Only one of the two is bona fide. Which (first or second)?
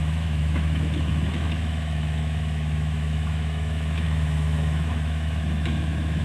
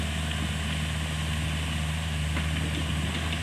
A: second